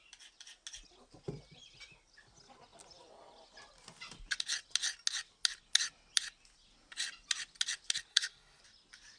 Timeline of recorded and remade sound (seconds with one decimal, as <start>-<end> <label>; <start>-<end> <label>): 0.0-8.1 recorded; 8.1-8.6 remade; 8.6-9.2 recorded